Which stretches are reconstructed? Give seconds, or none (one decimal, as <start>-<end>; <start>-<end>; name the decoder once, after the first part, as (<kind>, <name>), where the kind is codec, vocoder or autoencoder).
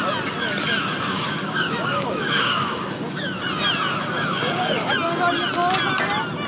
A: 0.8-3.4 (codec, DAC); 4.0-4.9